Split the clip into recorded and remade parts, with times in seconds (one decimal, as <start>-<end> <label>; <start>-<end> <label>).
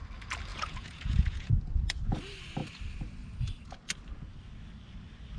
0.0-0.5 recorded; 0.5-1.6 remade; 1.6-5.4 recorded